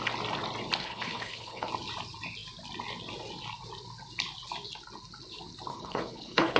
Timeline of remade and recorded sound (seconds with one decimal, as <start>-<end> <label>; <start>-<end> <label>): 0.0-0.8 recorded; 0.8-1.7 remade; 1.7-5.7 recorded; 5.7-6.6 remade